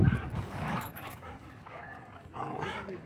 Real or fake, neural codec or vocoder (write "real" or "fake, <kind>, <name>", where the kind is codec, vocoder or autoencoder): fake, codec, DAC